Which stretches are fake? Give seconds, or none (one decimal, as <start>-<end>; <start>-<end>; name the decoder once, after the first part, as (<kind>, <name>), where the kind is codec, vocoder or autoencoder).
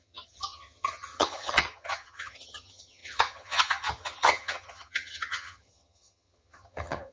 0.0-7.1 (vocoder, HiFi-GAN)